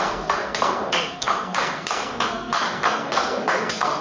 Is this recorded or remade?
remade